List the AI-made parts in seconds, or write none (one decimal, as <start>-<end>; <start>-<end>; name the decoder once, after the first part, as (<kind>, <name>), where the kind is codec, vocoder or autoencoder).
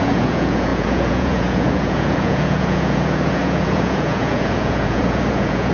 0.0-5.7 (vocoder, Vocos)